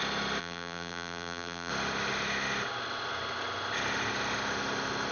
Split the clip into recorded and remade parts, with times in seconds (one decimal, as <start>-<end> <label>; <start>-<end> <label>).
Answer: 0.0-0.4 recorded; 0.4-1.7 remade; 1.7-5.1 recorded